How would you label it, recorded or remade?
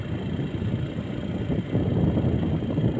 recorded